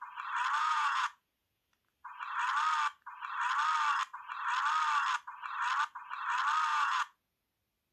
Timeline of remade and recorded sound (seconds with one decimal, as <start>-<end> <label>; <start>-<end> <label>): 0.0-0.6 recorded; 0.6-1.7 remade; 1.7-6.7 recorded; 6.7-7.5 remade; 7.5-7.9 recorded